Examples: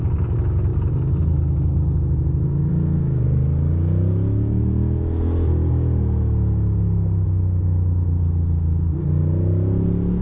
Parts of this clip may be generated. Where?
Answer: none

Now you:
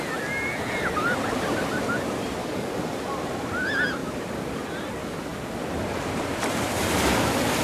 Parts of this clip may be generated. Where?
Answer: 2.4-3.2 (codec, DAC)

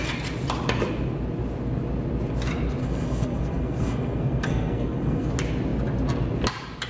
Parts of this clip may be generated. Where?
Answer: 2.8-5.3 (codec, SNAC)

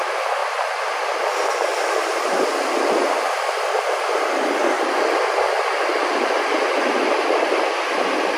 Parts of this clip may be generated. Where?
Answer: 1.7-6.4 (vocoder, BigVGAN v2)